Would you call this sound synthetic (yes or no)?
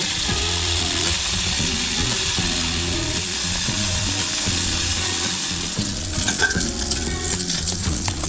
yes